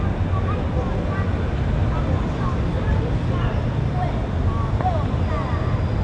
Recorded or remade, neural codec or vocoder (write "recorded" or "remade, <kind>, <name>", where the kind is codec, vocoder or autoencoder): recorded